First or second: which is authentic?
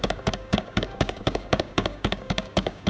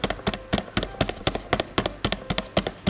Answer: second